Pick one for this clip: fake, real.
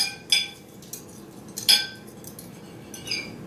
real